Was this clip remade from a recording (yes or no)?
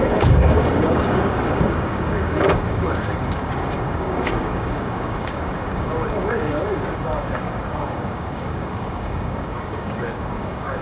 yes